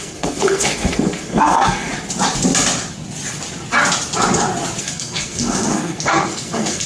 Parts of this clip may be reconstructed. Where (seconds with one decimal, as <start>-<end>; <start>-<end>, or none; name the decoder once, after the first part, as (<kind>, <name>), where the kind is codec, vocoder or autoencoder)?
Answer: 0.0-1.9 (codec, SNAC); 4.8-6.9